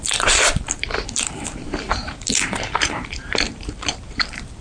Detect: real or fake fake